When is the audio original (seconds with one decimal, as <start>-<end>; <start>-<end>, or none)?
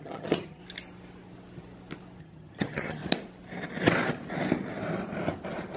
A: 0.6-2.2; 3.0-5.8